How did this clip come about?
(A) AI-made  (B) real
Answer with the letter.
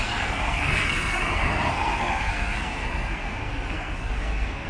A